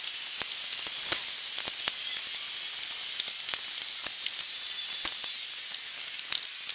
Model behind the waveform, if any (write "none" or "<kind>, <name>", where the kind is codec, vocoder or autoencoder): none